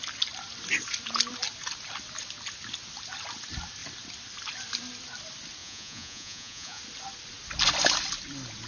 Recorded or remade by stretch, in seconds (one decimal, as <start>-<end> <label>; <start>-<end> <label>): 0.0-5.6 recorded; 5.6-6.8 remade; 6.8-8.7 recorded